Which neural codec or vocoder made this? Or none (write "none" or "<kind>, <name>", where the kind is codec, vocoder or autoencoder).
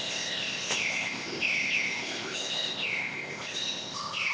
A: codec, ZipCodec